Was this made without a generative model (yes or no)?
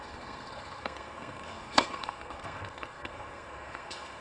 no